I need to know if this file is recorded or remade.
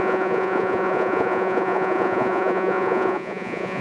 remade